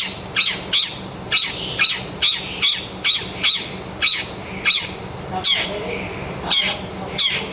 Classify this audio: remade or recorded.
recorded